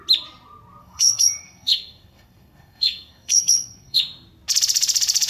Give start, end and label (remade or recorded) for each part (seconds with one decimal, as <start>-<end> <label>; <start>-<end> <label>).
0.0-0.8 recorded; 0.8-4.0 remade; 4.0-5.3 recorded